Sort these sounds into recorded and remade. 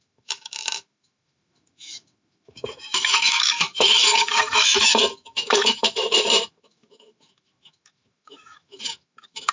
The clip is remade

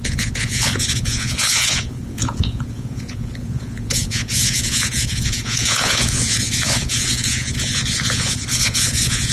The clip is remade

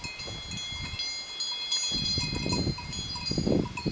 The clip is recorded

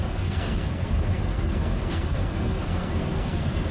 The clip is remade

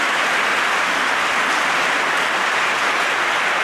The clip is recorded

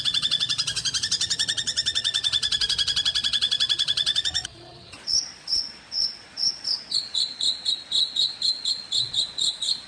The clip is remade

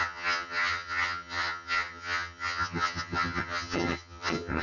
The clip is remade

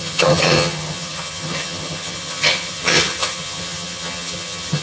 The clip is remade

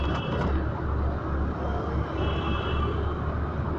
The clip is recorded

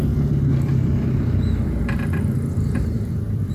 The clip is remade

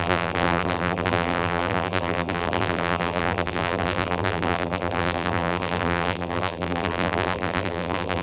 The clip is remade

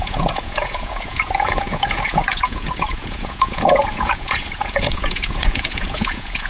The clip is remade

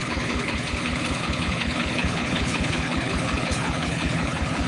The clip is remade